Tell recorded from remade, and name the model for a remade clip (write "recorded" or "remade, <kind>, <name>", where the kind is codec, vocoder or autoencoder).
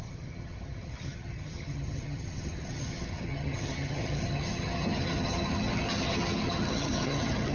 remade, vocoder, HiFi-GAN